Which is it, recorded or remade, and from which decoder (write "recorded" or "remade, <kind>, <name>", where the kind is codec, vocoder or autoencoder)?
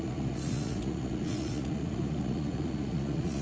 remade, vocoder, Vocos